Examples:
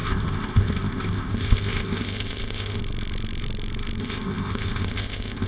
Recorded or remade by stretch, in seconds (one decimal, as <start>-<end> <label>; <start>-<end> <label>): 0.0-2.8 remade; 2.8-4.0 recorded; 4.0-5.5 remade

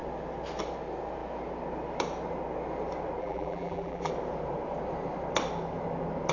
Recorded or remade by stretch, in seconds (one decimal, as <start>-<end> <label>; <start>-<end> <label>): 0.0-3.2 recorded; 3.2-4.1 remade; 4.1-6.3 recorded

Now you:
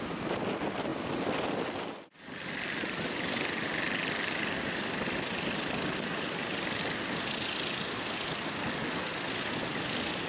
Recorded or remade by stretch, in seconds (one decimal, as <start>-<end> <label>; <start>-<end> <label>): 0.0-10.3 recorded

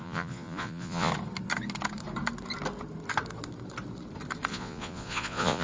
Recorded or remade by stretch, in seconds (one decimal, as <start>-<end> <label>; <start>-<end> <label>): 0.0-1.1 remade; 1.1-4.5 recorded; 4.5-5.6 remade